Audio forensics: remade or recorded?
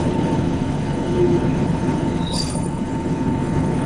remade